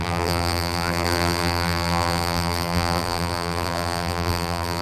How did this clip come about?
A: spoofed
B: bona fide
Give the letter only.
A